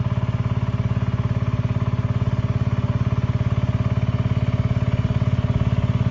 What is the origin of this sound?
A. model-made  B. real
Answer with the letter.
B